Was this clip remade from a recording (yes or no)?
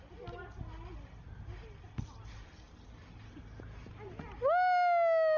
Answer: no